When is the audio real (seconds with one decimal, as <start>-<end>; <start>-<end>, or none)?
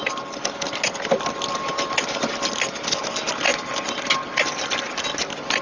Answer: 0.0-5.6